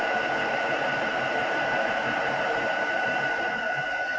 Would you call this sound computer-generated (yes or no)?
yes